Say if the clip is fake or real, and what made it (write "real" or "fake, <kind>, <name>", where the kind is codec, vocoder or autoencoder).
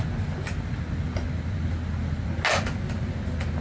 real